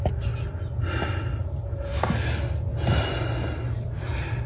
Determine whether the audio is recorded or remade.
recorded